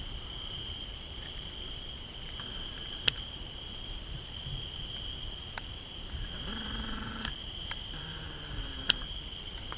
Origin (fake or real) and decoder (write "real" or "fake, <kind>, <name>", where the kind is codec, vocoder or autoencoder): fake, vocoder, BigVGAN v2